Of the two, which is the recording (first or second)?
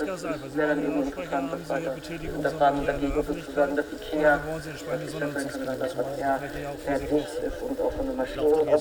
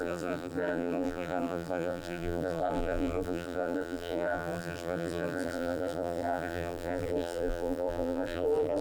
first